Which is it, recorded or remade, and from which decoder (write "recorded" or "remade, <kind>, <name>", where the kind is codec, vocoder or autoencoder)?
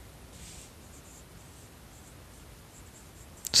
recorded